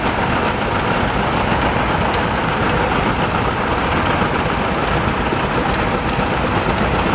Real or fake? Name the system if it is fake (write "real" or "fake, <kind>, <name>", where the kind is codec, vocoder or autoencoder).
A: real